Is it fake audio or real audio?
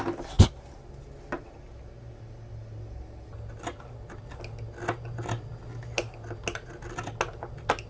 real